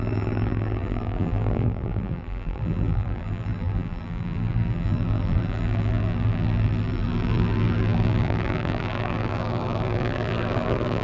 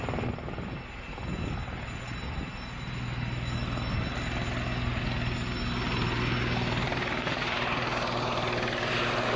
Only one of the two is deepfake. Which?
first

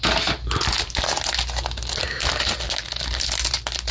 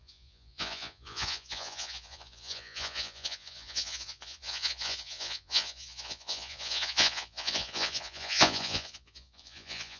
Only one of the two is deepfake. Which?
second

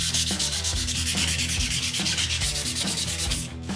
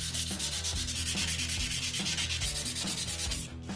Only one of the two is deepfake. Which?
first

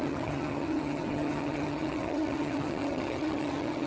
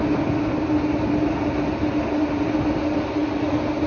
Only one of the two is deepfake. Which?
first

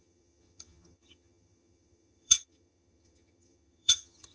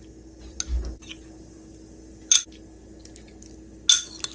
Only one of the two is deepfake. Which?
first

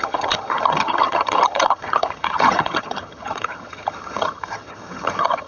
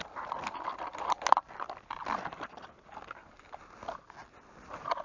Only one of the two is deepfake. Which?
first